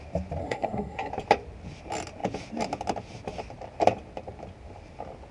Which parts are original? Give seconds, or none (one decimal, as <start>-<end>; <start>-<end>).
0.0-0.4; 1.1-5.3